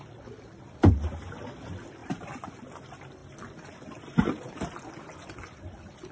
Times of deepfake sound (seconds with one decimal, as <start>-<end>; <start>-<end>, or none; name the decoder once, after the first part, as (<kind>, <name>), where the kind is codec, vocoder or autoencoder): none